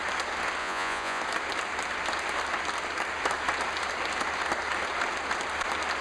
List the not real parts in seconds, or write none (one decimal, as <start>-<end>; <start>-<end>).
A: 0.6-1.2